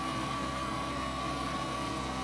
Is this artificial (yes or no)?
yes